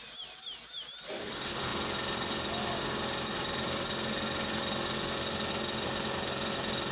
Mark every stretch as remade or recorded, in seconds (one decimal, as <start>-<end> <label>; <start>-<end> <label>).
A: 0.0-6.9 recorded